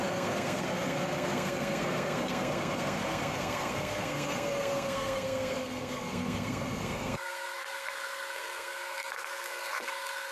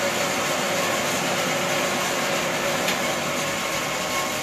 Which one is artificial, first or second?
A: first